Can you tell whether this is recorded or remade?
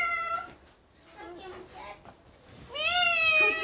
recorded